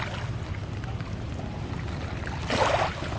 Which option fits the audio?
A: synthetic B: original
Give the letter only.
B